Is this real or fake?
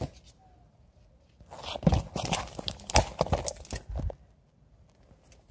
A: real